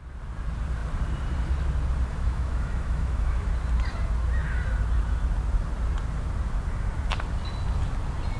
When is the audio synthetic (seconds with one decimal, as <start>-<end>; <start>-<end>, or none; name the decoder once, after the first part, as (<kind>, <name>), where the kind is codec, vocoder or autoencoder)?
2.1-3.5 (autoencoder, DAC-VAE)